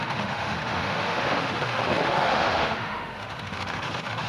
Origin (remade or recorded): remade